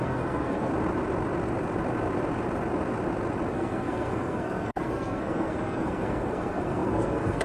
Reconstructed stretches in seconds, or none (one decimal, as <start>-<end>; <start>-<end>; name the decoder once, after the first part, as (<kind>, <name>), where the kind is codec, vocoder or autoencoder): 0.0-0.7 (codec, SNAC); 3.5-7.4